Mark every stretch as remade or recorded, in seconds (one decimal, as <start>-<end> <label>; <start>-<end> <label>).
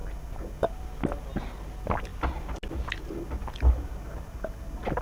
0.0-5.0 recorded